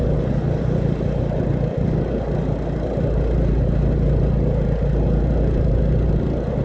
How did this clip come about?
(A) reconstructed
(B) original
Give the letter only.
B